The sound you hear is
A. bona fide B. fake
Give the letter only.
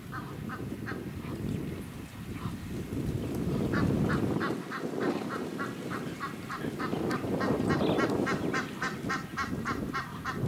A